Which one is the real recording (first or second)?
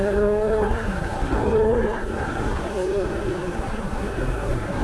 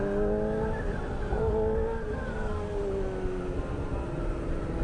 second